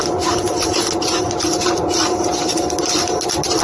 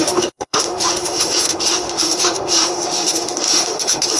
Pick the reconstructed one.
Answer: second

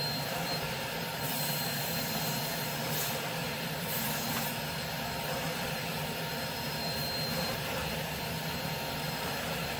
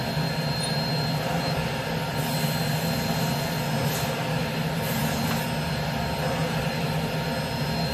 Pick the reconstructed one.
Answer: first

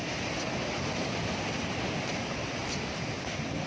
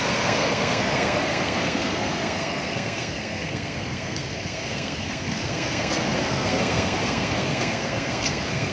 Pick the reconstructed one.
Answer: second